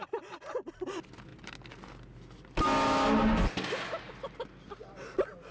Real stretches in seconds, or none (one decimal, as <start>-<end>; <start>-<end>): 0.0-5.5